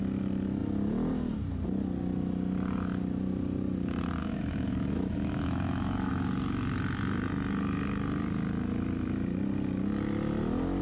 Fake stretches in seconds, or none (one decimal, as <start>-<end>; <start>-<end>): 4.2-6.1